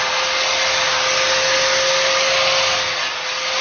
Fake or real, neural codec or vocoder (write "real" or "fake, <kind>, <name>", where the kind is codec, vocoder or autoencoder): real